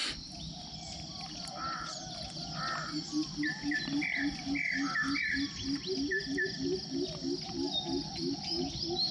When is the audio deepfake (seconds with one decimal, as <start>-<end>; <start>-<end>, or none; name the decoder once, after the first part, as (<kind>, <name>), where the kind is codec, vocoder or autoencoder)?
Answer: none